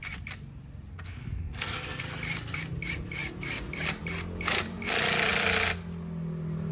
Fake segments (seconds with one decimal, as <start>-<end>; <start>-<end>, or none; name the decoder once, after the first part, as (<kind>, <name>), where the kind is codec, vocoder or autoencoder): 0.9-2.0 (codec, SNAC)